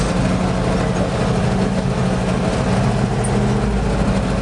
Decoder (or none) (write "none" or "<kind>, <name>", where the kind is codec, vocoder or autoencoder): none